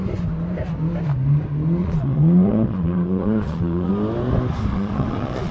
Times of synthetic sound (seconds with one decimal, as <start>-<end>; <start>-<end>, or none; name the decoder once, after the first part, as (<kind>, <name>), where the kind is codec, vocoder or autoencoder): 1.8-3.9 (vocoder, Vocos); 4.7-5.5